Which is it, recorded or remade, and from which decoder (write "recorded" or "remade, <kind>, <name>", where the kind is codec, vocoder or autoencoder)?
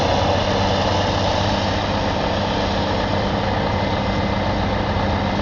recorded